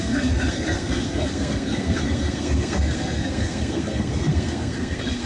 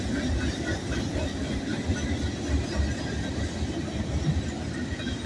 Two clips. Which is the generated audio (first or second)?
first